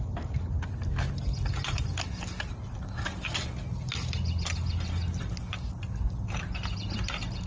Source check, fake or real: real